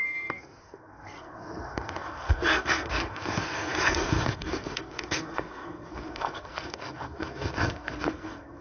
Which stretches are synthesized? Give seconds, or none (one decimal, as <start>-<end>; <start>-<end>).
0.0-8.6